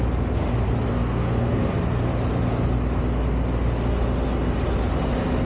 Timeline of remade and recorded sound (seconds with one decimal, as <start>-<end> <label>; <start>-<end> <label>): 0.0-0.9 recorded; 0.9-1.8 remade; 1.8-5.4 recorded